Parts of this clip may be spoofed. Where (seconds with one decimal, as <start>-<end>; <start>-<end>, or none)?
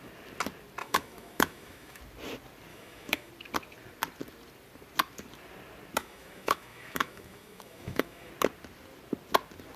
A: 0.8-2.0; 2.7-3.3; 6.0-8.3